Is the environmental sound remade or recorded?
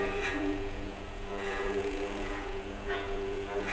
remade